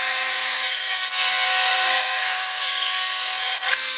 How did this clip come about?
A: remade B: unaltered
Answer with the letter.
A